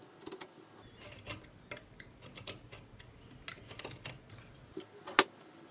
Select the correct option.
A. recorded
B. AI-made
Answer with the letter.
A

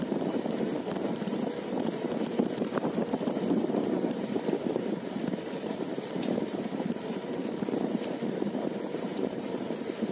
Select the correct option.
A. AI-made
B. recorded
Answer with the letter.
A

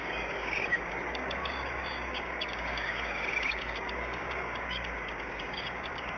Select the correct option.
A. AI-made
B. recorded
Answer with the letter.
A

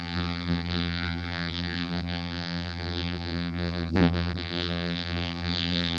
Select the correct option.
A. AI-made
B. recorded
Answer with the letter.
A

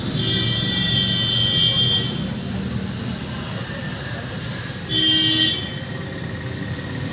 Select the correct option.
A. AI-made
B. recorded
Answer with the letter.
B